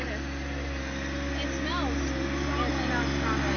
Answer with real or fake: real